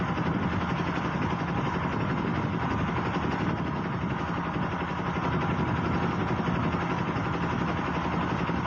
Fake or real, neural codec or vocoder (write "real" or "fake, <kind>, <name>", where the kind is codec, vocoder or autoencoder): real